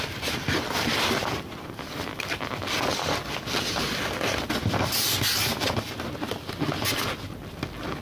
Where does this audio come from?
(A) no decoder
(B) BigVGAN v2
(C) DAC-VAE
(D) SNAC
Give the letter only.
A